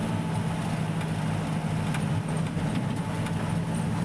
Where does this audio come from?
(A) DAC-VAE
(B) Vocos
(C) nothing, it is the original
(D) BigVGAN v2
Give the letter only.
C